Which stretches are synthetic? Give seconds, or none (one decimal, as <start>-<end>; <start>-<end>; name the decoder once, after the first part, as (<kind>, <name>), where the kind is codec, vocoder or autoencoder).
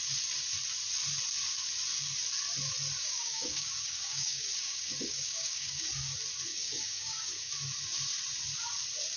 3.0-5.9 (codec, DAC); 6.5-7.5